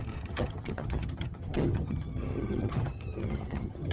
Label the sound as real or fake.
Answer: fake